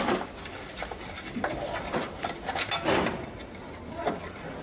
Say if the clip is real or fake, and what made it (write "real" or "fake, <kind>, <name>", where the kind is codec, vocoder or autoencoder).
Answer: fake, vocoder, BigVGAN v2